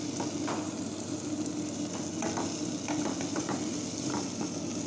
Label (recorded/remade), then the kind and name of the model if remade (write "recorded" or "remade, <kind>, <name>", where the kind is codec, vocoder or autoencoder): recorded